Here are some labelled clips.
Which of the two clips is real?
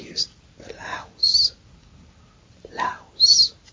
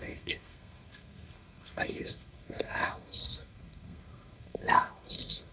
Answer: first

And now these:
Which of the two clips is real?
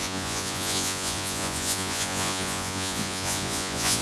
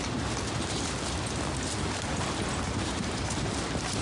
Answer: second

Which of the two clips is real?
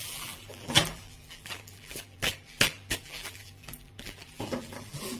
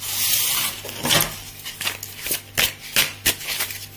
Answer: second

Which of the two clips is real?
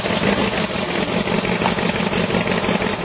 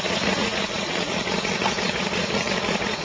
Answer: first